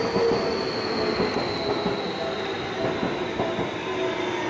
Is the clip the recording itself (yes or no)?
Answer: yes